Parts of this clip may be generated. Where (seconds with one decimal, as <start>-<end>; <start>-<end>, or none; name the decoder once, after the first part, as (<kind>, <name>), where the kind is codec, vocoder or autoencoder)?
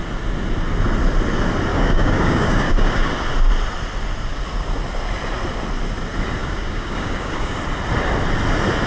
1.7-3.1 (codec, DAC); 6.4-7.5